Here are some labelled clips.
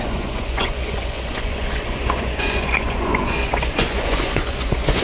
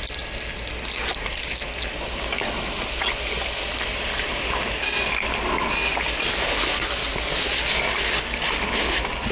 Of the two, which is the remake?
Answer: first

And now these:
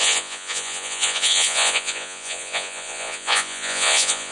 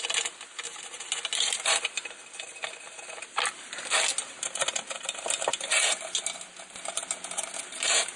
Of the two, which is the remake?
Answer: first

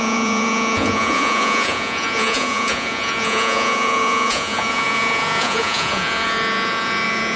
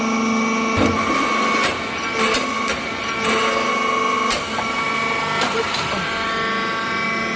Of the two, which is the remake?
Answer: first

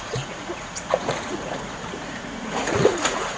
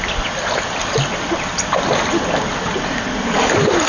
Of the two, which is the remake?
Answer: first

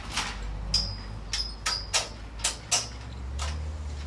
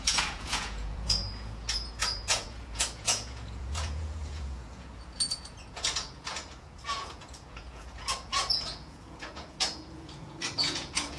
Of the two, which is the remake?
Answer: second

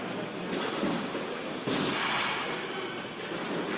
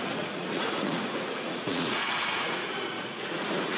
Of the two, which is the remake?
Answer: second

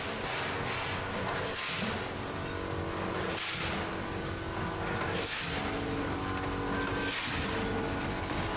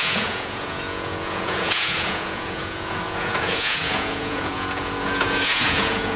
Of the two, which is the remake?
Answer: second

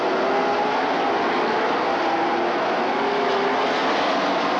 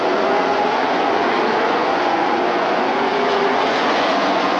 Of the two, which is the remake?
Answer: second